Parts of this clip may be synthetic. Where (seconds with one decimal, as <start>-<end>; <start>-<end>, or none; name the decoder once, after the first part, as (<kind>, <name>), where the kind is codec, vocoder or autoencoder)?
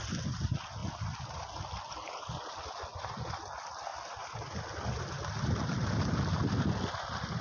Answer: none